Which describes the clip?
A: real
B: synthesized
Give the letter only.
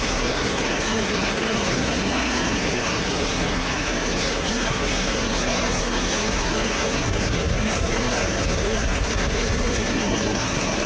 B